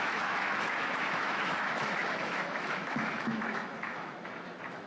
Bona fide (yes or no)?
no